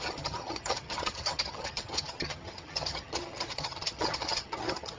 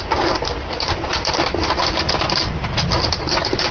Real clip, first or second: second